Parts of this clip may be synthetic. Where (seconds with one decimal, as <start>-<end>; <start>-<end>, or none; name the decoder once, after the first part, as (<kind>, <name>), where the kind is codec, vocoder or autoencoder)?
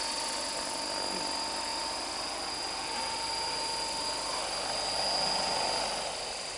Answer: none